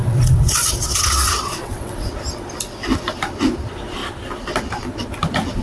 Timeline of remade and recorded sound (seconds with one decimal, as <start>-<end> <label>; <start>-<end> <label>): 0.0-2.1 remade; 2.1-5.6 recorded